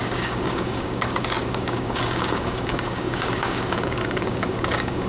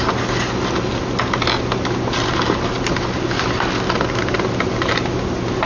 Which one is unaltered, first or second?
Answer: second